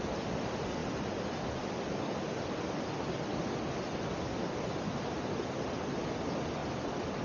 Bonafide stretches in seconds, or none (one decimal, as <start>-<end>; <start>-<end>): 0.0-0.8; 2.5-6.6